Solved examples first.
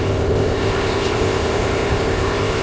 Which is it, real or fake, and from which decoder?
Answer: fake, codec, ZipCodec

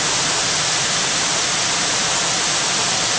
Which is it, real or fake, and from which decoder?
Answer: real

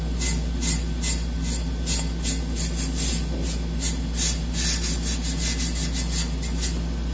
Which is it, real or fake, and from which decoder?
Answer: real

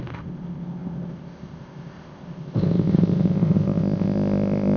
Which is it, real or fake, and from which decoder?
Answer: fake, codec, ZipCodec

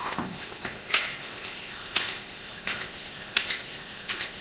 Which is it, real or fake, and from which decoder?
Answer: fake, codec, ZipCodec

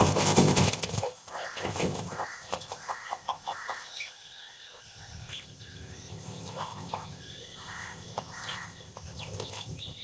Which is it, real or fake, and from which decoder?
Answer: fake, codec, ZipCodec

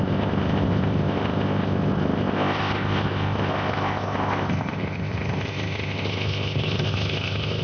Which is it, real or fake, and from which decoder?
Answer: fake, codec, ZipCodec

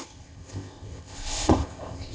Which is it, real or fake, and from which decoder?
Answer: fake, codec, ZipCodec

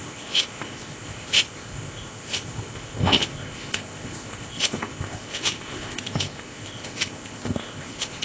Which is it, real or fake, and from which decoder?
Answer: fake, codec, ZipCodec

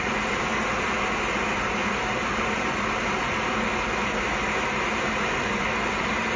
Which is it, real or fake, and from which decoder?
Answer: real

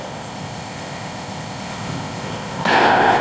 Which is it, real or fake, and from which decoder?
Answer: fake, codec, ZipCodec